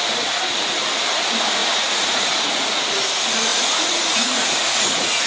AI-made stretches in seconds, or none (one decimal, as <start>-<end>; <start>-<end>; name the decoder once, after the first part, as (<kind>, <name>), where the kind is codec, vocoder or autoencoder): 1.6-2.8 (vocoder, Vocos); 3.5-5.3